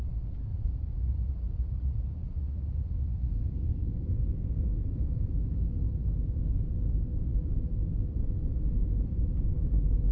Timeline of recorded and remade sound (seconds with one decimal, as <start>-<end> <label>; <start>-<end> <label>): 0.0-0.5 recorded; 0.5-3.3 remade; 3.3-10.1 recorded